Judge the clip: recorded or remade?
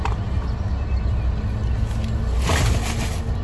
recorded